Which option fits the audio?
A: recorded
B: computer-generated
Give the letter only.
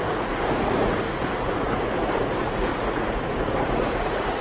B